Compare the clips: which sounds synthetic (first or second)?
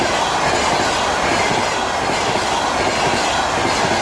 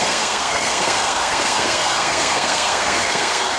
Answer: second